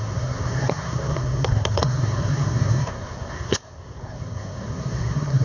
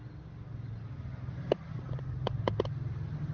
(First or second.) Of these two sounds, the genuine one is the second